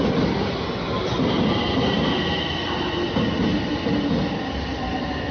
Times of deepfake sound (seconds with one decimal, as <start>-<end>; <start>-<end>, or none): none